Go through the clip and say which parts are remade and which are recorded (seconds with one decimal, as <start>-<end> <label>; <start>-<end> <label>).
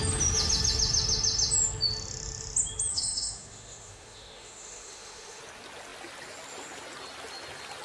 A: 0.0-2.9 recorded; 2.9-5.4 remade; 5.4-7.8 recorded